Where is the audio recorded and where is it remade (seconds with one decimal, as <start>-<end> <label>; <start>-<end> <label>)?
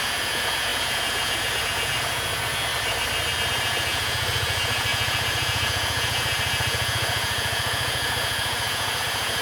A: 0.0-2.7 remade; 2.7-3.5 recorded; 3.5-9.4 remade